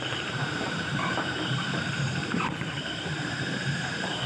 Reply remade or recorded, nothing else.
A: remade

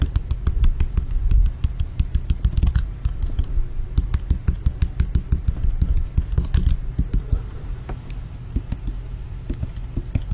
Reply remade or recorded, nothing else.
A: recorded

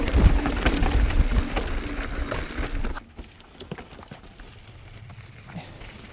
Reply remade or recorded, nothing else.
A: recorded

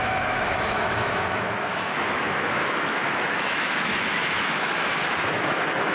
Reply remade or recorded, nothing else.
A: remade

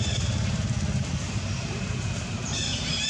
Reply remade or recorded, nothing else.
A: recorded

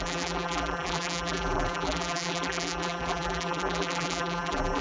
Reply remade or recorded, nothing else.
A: remade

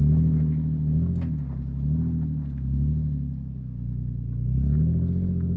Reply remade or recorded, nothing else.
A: recorded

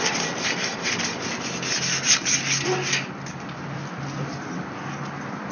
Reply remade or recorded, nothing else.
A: recorded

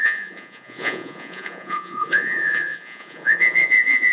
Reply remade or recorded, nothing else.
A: remade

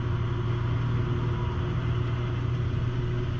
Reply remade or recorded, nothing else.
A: recorded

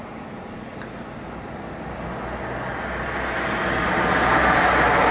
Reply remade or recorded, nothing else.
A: recorded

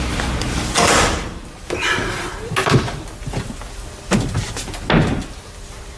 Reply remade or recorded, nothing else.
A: recorded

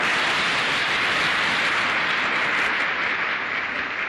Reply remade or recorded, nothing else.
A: recorded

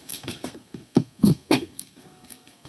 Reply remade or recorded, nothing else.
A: remade